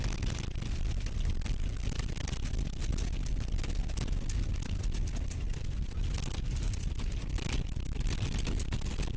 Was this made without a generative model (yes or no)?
yes